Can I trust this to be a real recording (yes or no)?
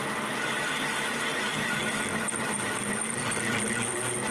yes